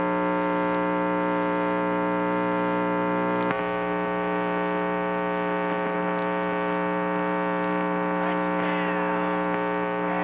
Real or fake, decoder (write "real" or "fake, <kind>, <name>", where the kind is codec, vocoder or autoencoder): real